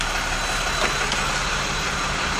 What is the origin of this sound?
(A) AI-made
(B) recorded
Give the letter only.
B